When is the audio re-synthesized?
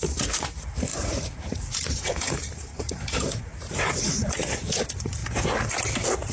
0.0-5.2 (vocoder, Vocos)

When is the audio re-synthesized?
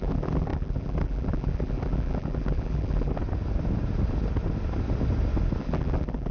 0.0-3.2 (vocoder, BigVGAN v2); 5.6-6.3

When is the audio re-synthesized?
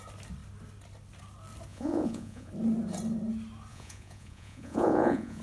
1.7-2.5 (vocoder, Vocos); 3.7-5.4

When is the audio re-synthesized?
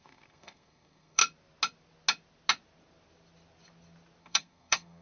0.0-1.2 (codec, SNAC); 4.2-5.0